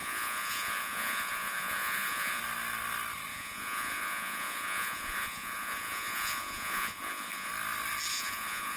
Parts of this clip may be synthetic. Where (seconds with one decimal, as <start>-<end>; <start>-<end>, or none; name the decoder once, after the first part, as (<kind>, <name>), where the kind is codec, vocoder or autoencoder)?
0.0-2.4 (vocoder, Vocos); 3.3-7.5; 8.1-8.8